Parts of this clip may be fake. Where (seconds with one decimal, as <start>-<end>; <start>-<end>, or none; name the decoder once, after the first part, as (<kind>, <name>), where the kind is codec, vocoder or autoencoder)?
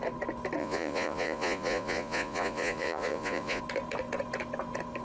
0.6-3.6 (vocoder, Vocos)